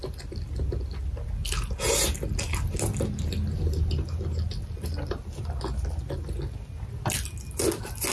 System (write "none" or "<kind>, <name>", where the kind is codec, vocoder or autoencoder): none